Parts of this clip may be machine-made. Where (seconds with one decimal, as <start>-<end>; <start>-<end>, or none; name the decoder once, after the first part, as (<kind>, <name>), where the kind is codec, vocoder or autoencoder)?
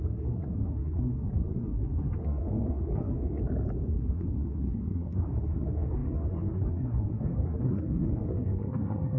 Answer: 0.0-3.4 (codec, SNAC); 3.9-9.2